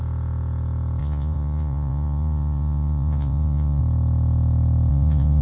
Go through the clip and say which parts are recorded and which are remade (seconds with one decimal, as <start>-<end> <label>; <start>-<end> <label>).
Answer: 0.0-1.0 recorded; 1.0-3.8 remade; 3.8-4.9 recorded; 4.9-5.4 remade